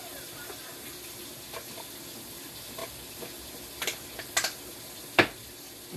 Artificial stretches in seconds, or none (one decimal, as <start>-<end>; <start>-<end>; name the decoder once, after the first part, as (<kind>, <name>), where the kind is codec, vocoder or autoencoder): none